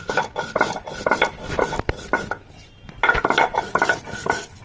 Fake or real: real